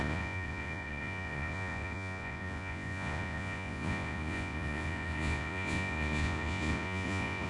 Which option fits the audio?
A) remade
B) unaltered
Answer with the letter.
A